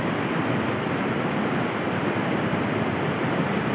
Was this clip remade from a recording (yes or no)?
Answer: no